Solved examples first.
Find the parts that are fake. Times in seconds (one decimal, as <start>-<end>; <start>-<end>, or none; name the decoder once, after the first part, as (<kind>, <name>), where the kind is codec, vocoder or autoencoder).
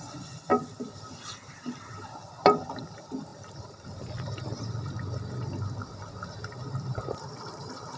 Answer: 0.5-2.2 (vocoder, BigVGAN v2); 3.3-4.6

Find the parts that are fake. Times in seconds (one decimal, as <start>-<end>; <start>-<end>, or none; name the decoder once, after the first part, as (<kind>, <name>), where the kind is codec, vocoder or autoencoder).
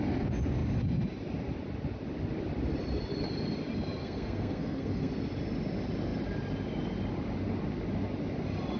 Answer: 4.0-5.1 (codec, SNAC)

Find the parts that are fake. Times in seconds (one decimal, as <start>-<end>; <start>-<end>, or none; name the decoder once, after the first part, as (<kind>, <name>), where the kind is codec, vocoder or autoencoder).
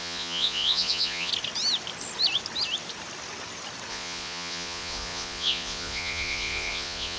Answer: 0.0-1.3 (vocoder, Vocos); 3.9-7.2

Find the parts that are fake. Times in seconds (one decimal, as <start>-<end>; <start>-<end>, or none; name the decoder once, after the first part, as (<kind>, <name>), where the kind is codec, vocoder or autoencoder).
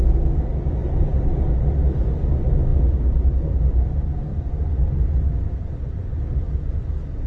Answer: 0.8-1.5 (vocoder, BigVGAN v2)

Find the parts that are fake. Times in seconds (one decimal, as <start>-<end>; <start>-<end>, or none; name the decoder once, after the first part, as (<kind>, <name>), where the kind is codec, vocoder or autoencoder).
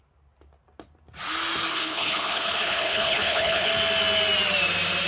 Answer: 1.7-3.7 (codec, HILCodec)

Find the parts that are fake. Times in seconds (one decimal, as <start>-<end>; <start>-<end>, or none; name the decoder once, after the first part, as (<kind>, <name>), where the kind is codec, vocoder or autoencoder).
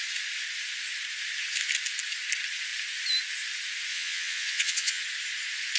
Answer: 3.9-5.0 (vocoder, Vocos)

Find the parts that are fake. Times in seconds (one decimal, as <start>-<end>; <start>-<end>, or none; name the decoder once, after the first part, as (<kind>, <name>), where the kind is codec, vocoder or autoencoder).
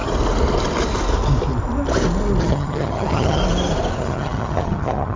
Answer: 2.4-3.4 (vocoder, HiFi-GAN); 4.0-5.2